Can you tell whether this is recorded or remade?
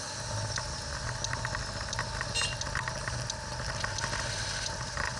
recorded